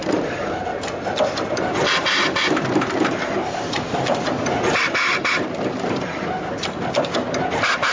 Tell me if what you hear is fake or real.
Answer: real